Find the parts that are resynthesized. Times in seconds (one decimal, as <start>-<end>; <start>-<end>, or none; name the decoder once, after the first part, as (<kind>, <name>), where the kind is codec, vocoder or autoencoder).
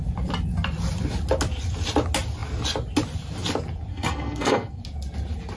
3.9-4.8 (codec, SNAC)